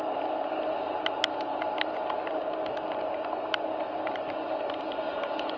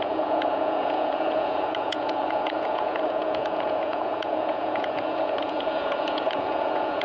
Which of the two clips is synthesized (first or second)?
second